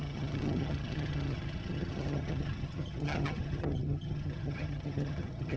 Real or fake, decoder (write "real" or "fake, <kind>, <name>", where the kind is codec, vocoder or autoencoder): fake, vocoder, HiFi-GAN